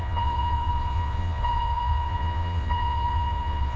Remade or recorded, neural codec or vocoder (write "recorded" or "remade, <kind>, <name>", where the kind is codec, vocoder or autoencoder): remade, vocoder, Vocos